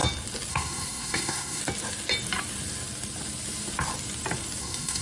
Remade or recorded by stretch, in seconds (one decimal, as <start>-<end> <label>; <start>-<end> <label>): 0.0-0.5 recorded; 0.5-1.6 remade; 1.6-4.6 recorded; 4.6-5.0 remade